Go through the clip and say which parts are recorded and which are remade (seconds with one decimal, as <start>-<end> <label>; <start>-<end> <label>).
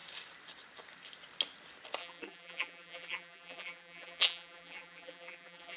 0.0-2.0 recorded; 2.0-5.8 remade